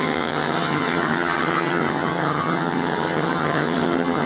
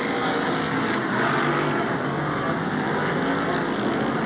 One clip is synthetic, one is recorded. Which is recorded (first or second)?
second